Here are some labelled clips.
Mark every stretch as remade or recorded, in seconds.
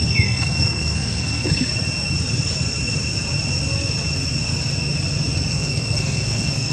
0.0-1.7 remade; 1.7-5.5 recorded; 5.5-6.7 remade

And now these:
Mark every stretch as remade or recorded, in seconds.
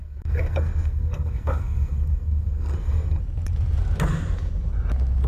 0.0-3.2 remade; 3.2-5.3 recorded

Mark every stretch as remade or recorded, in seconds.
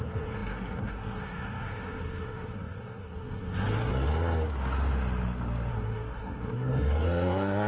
0.0-3.9 remade; 3.9-5.7 recorded; 5.7-7.7 remade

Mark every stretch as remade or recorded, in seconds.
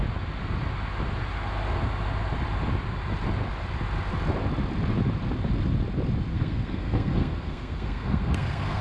0.0-6.3 recorded; 6.3-8.8 remade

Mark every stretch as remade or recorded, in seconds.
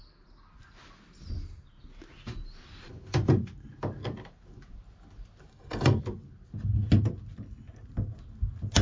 0.0-5.5 recorded; 5.5-6.0 remade; 6.0-8.8 recorded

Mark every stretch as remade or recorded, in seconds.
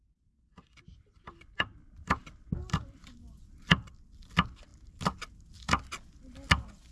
0.0-6.9 recorded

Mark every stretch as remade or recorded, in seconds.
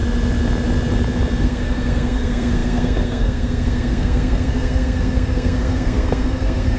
0.0-1.4 recorded; 1.4-6.8 remade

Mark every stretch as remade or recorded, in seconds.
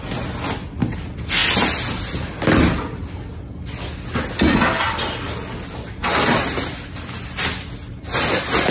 0.0-8.7 recorded